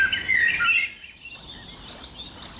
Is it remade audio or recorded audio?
recorded